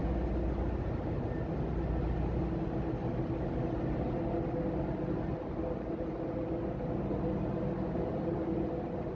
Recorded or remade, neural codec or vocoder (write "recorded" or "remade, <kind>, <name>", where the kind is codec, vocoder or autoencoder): recorded